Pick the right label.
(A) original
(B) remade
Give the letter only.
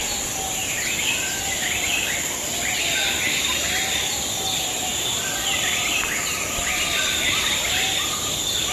A